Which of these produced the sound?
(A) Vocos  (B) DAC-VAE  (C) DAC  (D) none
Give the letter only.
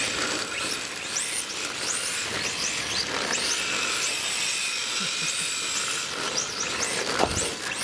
D